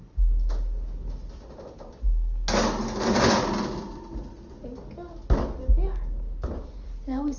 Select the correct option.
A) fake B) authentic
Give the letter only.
B